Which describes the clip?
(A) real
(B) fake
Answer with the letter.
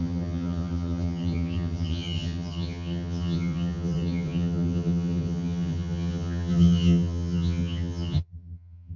B